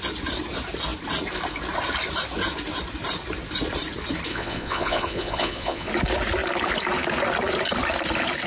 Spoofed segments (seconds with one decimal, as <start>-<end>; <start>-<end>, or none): 4.3-5.9